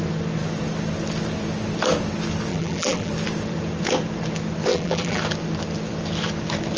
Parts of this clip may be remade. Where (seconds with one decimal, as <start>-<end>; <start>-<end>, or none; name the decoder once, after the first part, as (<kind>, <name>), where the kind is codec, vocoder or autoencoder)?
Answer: 2.5-3.1 (vocoder, BigVGAN v2); 4.7-5.2